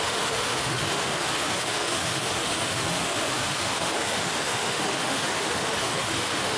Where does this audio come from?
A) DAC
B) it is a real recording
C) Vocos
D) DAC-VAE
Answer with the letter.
D